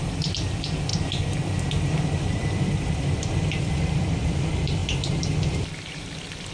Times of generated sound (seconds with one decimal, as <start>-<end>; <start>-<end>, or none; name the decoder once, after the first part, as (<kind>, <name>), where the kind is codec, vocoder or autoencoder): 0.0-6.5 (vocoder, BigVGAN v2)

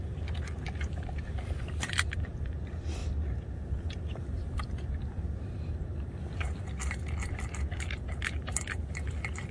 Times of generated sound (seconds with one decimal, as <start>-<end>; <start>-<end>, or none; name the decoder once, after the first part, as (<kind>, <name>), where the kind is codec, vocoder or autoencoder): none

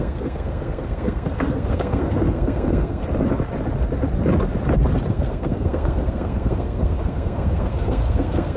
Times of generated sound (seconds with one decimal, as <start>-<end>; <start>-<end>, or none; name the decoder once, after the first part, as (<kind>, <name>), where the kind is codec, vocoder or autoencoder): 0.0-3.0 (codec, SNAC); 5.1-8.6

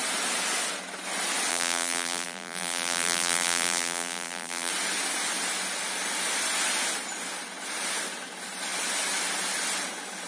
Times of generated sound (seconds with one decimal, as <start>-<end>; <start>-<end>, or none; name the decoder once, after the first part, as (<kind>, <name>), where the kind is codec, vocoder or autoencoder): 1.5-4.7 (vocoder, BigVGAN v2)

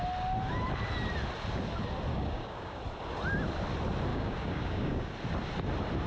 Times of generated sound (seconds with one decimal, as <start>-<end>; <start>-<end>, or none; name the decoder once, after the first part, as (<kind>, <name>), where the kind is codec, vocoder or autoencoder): 2.1-2.8 (codec, DAC); 4.1-5.1